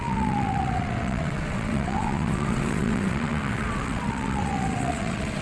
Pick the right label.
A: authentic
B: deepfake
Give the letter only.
B